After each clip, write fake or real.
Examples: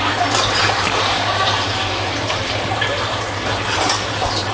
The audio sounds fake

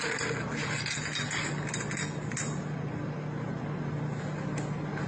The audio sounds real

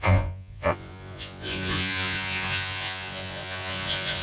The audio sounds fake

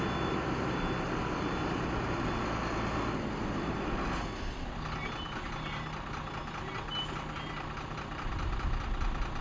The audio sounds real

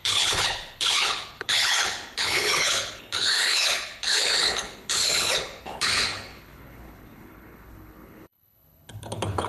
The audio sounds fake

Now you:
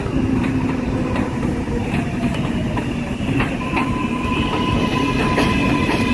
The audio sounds fake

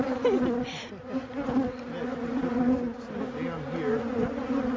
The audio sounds real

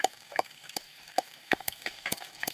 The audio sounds fake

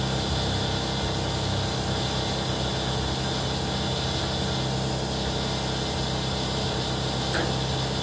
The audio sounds real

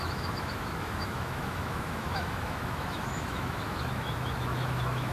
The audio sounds fake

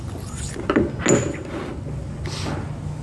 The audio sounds real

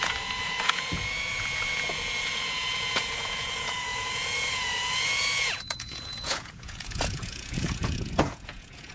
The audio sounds fake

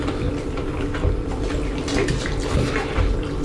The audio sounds real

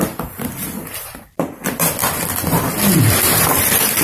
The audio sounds fake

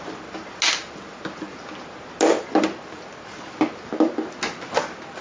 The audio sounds real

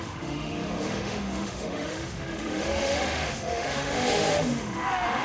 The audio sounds fake